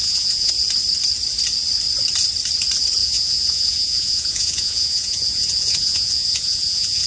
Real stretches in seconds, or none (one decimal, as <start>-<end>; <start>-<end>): 0.5-3.0